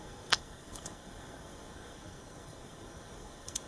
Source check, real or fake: fake